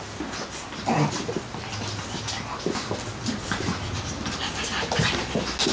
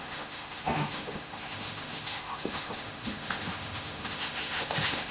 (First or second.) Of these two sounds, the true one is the first